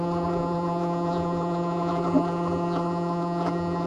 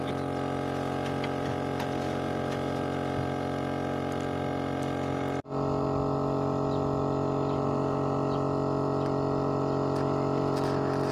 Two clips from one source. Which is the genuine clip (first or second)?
second